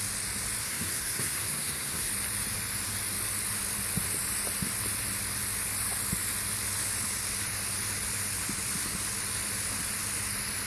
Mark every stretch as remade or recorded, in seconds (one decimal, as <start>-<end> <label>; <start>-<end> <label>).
0.0-0.6 recorded; 0.6-2.1 remade; 2.1-10.7 recorded